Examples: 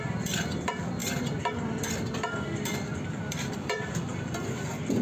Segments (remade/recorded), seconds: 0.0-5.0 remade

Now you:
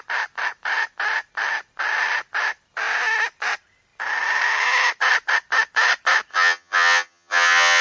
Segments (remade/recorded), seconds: 0.0-6.3 recorded; 6.3-7.8 remade